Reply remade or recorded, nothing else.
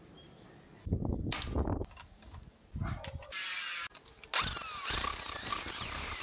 recorded